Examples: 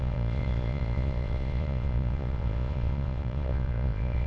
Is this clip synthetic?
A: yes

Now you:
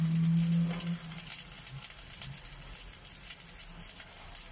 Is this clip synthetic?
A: no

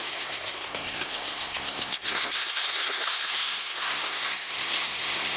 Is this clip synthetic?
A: yes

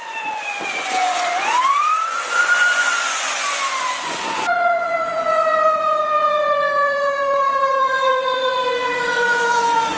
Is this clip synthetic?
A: yes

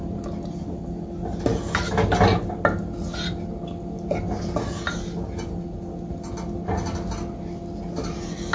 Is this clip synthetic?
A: no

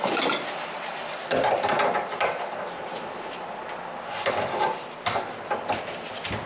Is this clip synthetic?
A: no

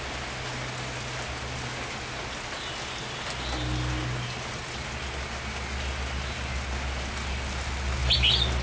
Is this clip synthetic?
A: no